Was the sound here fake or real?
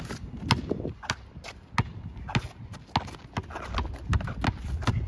real